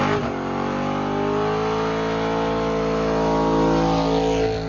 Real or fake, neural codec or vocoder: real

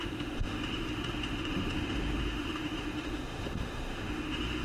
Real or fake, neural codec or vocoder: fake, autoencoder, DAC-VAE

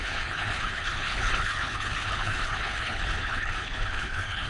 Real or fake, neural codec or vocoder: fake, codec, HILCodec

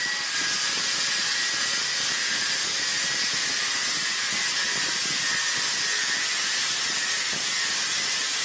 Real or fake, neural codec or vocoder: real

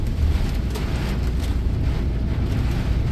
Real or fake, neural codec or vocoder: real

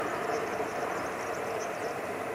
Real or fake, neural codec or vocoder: real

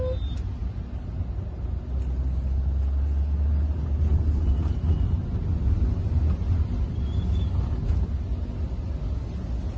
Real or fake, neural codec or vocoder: real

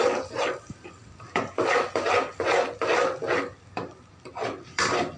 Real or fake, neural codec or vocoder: fake, vocoder, BigVGAN v2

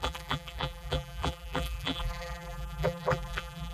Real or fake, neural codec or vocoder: fake, vocoder, BigVGAN v2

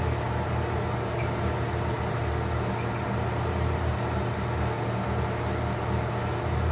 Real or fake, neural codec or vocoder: real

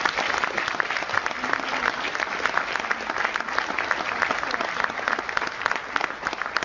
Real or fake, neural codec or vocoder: real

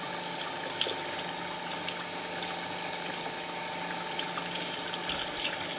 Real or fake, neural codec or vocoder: real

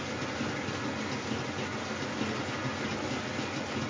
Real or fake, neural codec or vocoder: real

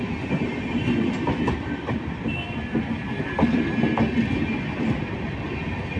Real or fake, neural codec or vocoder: real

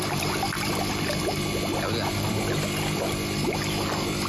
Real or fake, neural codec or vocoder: real